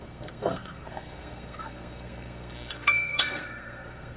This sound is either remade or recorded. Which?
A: remade